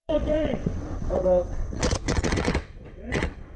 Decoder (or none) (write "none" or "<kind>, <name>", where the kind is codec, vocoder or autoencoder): vocoder, WaveNeXt